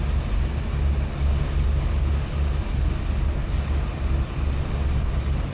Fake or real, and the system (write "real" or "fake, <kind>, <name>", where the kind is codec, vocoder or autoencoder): real